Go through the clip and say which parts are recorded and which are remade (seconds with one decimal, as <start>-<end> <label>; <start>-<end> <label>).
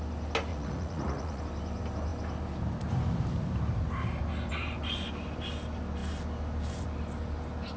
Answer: 0.0-0.5 recorded; 0.5-1.4 remade; 1.4-7.8 recorded